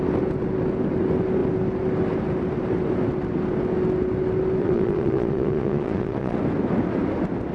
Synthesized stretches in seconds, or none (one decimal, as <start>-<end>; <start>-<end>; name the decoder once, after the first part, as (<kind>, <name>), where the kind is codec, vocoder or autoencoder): 4.6-6.4 (vocoder, Vocos)